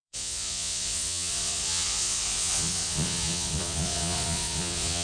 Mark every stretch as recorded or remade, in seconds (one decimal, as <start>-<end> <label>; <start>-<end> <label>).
0.0-5.0 remade

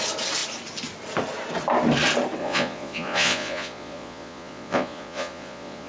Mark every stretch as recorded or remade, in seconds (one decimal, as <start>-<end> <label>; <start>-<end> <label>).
0.0-2.4 recorded; 2.4-5.9 remade

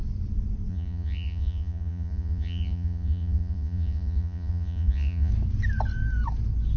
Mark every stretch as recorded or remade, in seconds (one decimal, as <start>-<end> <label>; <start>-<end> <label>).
0.0-0.7 recorded; 0.7-5.3 remade; 5.3-6.8 recorded

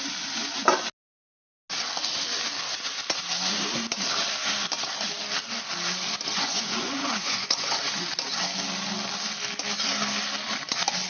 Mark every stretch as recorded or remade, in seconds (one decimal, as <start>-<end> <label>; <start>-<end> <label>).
0.0-6.3 recorded; 6.3-7.8 remade; 7.8-11.1 recorded

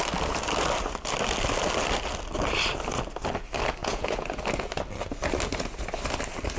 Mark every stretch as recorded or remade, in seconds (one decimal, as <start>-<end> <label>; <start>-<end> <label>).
0.0-3.8 recorded; 3.8-4.4 remade; 4.4-6.6 recorded

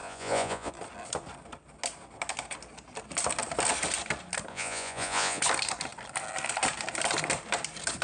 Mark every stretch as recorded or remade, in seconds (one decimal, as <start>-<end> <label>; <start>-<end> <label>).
0.0-0.7 remade; 0.7-4.5 recorded; 4.5-5.4 remade; 5.4-8.0 recorded

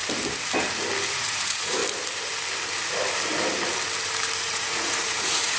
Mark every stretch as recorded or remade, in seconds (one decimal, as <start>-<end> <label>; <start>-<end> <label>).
0.0-1.1 recorded; 1.1-1.8 remade; 1.8-4.4 recorded; 4.4-5.6 remade